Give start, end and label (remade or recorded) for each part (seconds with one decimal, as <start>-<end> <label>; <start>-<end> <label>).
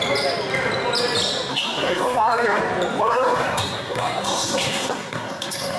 0.0-1.5 recorded; 1.5-2.6 remade; 2.6-3.0 recorded; 3.0-5.8 remade